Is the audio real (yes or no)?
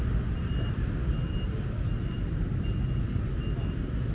yes